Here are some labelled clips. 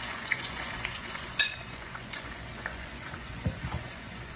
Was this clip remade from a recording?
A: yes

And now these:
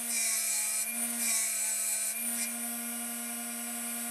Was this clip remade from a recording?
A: no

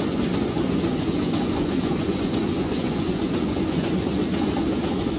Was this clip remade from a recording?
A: yes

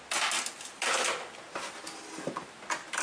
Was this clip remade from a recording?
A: no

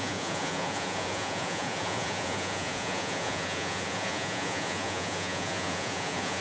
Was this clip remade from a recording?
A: yes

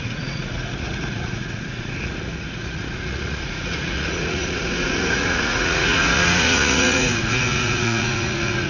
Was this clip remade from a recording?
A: yes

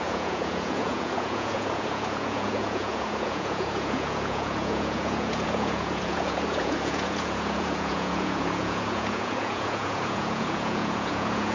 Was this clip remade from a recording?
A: yes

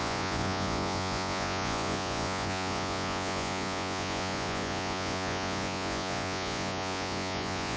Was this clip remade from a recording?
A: yes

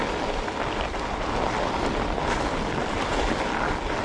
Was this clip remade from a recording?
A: no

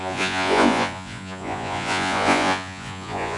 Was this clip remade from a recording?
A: yes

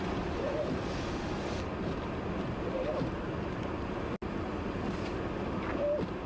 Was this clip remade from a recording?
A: no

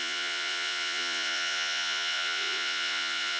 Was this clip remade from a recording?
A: yes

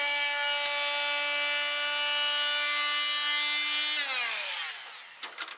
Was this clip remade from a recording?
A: no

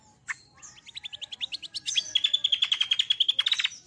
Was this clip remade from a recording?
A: no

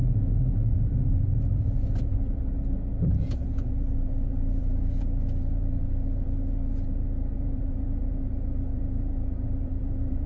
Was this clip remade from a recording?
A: yes